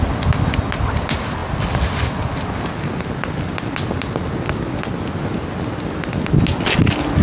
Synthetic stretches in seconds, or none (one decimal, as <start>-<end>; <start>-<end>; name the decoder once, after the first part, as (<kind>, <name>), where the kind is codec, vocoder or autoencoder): none